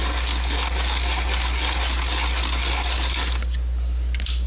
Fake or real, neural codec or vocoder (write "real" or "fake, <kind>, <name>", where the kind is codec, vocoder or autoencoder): real